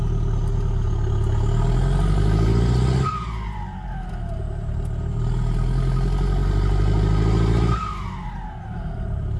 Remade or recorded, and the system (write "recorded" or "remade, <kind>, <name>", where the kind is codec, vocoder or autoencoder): recorded